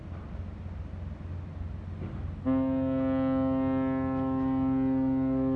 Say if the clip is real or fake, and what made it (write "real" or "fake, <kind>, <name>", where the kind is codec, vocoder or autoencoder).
real